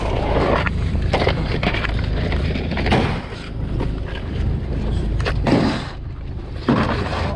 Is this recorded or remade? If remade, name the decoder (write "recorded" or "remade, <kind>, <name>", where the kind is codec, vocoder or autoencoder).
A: remade, vocoder, BigVGAN v2